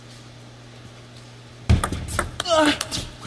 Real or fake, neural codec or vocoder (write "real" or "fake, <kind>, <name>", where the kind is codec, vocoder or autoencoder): real